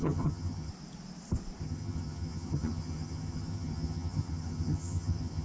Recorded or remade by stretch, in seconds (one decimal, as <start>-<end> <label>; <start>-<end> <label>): 0.0-0.7 remade; 0.7-1.6 recorded; 1.6-5.4 remade